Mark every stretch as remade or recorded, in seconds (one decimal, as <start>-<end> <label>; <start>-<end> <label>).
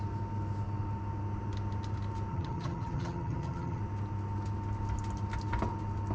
0.0-2.3 recorded; 2.3-3.8 remade; 3.8-6.1 recorded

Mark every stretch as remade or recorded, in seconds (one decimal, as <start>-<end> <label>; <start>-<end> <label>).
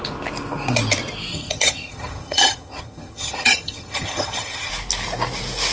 0.0-1.3 recorded; 1.3-4.7 remade; 4.7-5.7 recorded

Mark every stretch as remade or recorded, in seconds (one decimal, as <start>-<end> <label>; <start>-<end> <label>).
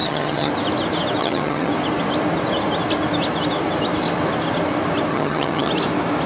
0.0-0.5 remade; 0.5-1.2 recorded; 1.2-1.7 remade; 1.7-5.1 recorded; 5.1-5.7 remade; 5.7-6.3 recorded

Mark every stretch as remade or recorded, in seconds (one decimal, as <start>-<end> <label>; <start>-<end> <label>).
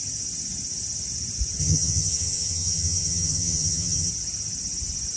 0.0-1.6 recorded; 1.6-4.1 remade; 4.1-5.2 recorded